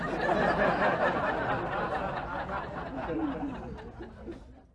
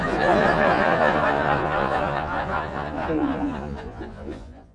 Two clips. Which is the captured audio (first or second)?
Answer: first